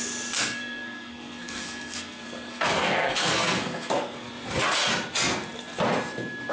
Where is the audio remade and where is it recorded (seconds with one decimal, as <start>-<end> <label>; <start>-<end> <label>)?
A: 0.0-0.4 recorded; 0.4-4.3 remade; 4.3-6.5 recorded